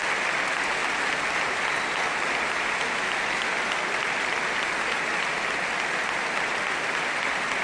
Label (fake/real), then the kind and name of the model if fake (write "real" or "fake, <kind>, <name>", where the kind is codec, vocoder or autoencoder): real